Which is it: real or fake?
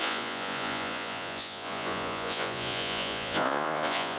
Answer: fake